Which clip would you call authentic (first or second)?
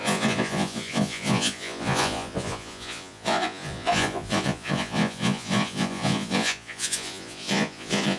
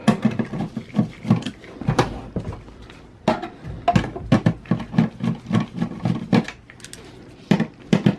second